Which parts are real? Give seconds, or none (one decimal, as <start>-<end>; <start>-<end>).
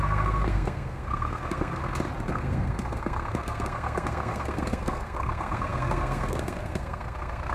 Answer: 1.8-2.3